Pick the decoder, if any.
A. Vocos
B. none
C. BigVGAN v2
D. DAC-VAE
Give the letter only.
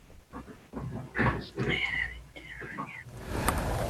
B